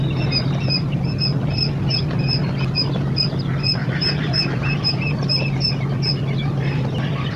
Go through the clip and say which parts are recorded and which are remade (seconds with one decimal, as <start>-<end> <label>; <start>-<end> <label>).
0.0-3.8 recorded; 3.8-4.9 remade; 4.9-7.4 recorded